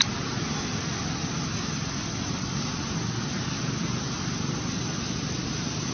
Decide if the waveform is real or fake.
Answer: real